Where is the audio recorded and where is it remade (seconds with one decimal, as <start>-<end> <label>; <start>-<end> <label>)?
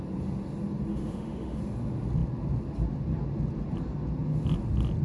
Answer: 0.0-0.9 recorded; 0.9-1.6 remade; 1.6-5.0 recorded